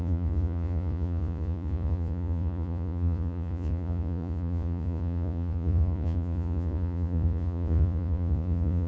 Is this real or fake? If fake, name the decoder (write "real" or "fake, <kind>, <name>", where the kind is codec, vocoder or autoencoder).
fake, vocoder, Vocos